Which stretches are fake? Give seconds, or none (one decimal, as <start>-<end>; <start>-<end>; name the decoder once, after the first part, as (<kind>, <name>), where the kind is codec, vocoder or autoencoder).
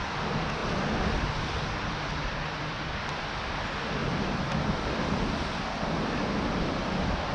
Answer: 0.6-3.3 (vocoder, BigVGAN v2); 4.0-5.4